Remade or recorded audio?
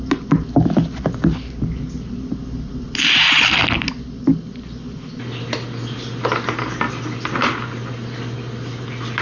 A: recorded